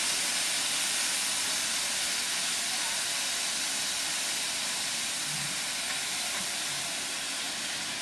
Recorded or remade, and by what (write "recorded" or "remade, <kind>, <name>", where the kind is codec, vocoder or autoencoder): recorded